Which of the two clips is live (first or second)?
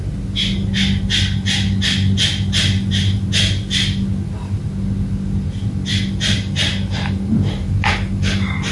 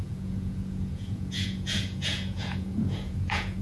first